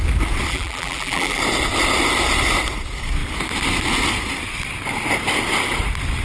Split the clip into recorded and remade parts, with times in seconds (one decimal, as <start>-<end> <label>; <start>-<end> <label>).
0.0-0.5 recorded; 0.5-1.4 remade; 1.4-6.2 recorded